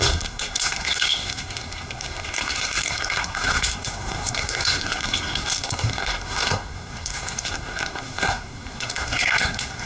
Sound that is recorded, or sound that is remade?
remade